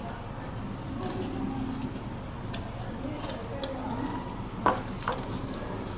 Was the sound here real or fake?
real